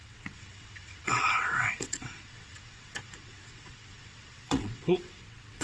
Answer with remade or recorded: remade